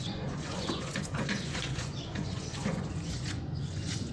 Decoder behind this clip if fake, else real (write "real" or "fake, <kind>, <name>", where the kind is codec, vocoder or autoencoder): fake, vocoder, Vocos